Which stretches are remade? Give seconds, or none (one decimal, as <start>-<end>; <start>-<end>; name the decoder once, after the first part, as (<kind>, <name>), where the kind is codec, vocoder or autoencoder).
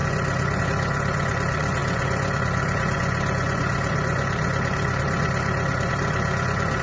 0.0-6.8 (vocoder, Vocos)